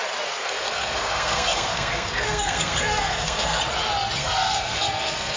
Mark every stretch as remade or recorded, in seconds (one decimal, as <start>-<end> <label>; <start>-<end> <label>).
0.0-0.4 recorded; 0.4-3.6 remade; 3.6-4.2 recorded; 4.2-5.4 remade